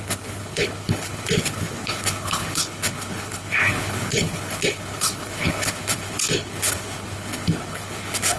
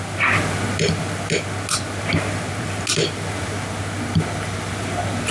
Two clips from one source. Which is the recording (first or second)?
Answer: second